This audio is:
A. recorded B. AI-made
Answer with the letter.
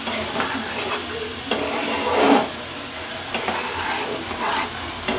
A